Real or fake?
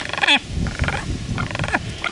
real